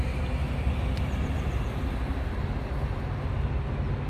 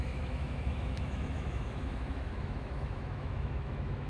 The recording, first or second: first